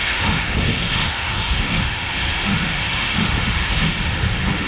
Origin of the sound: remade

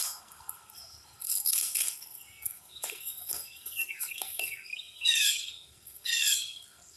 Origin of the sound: remade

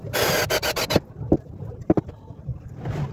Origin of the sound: recorded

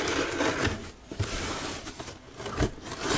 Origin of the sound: recorded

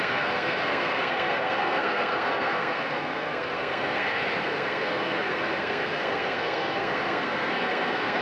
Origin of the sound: remade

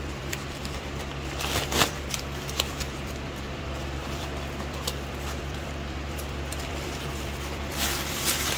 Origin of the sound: remade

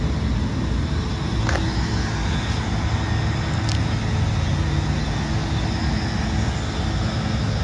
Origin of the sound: recorded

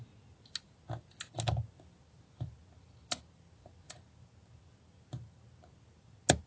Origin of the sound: recorded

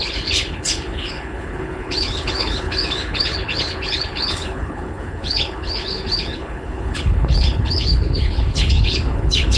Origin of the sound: remade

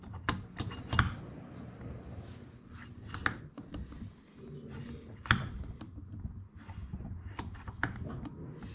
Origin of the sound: recorded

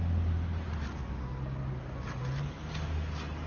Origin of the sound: recorded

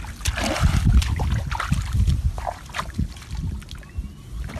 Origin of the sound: recorded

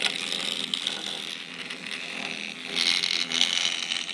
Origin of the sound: recorded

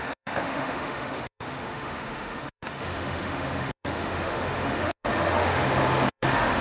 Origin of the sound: remade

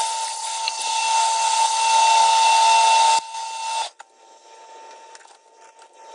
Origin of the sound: recorded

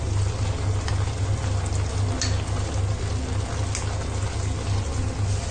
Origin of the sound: recorded